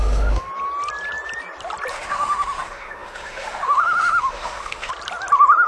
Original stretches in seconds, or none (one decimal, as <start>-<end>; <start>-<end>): 0.5-1.9; 4.9-5.7